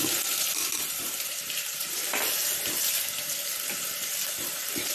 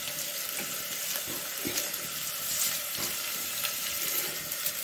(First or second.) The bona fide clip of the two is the second